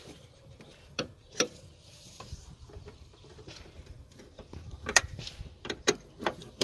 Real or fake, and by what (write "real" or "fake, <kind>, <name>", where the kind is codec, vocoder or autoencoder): fake, vocoder, BigVGAN v2